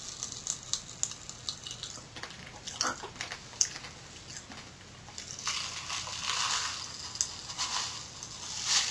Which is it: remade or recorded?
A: recorded